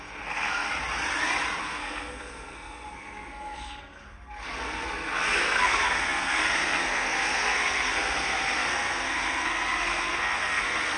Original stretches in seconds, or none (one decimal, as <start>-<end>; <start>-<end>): 0.7-1.6